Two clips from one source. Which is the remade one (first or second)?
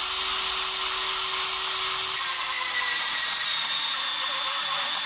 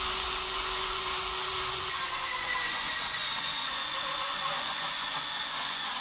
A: second